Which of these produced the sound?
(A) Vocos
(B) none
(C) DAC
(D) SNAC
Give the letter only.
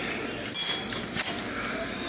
B